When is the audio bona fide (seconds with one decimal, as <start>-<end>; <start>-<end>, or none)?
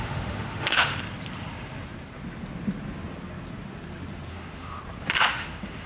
0.9-4.3; 4.8-5.3